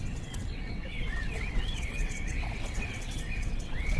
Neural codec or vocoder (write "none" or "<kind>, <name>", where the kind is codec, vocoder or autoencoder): vocoder, WaveNeXt